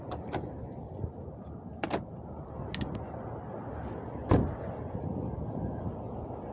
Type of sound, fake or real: real